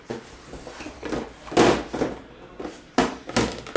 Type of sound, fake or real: real